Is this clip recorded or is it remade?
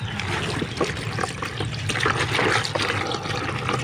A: recorded